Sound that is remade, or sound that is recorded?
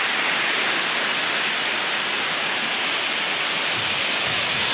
recorded